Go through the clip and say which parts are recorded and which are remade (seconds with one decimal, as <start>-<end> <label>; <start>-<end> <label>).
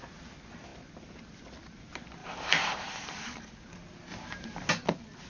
0.0-2.2 recorded; 2.2-3.5 remade; 3.5-4.1 recorded; 4.1-4.7 remade; 4.7-5.3 recorded